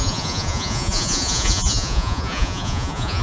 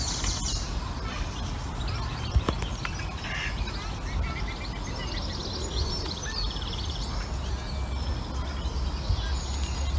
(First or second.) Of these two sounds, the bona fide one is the second